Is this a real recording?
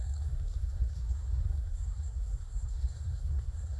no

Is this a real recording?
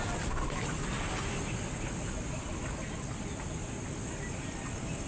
yes